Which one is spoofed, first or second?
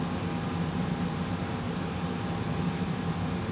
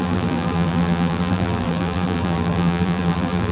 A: second